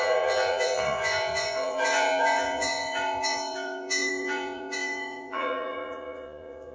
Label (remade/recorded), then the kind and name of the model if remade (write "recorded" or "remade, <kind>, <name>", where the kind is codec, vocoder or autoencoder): remade, vocoder, Vocos